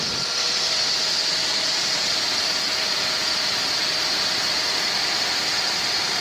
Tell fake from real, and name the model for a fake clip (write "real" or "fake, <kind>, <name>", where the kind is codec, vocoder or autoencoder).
real